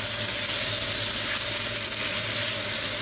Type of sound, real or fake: real